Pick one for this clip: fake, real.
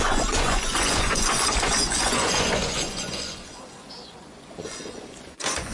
fake